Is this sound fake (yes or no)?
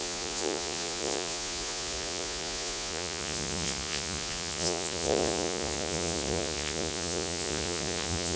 yes